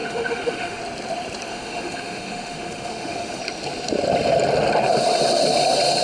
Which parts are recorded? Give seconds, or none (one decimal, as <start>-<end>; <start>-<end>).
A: 0.8-1.5; 3.4-6.0